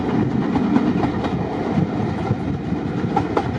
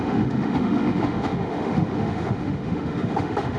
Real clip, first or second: first